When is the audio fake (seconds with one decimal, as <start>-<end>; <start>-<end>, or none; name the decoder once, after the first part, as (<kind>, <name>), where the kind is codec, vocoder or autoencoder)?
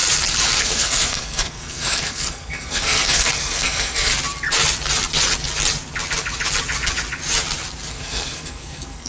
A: 0.6-4.1 (codec, SNAC); 7.9-9.1